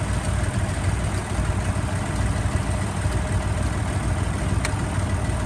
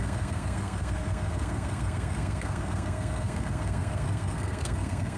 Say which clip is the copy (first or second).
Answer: second